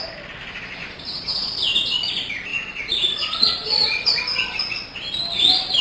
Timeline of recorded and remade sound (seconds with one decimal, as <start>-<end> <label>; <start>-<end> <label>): 0.0-0.8 recorded; 0.8-1.5 remade; 1.5-2.5 recorded; 2.5-4.2 remade; 4.2-5.8 recorded